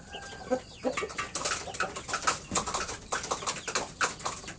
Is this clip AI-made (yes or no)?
no